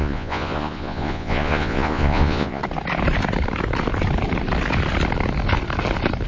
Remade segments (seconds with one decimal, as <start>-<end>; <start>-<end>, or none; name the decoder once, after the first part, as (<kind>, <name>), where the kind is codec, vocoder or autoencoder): 0.0-2.6 (vocoder, Vocos)